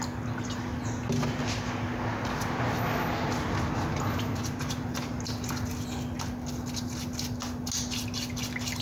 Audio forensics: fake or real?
real